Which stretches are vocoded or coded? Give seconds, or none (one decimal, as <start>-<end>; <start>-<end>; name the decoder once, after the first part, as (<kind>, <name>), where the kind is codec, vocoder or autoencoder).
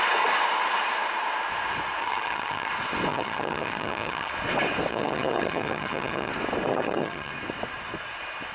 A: 2.0-2.7 (vocoder, HiFi-GAN); 3.1-4.3; 4.9-6.3; 6.7-7.3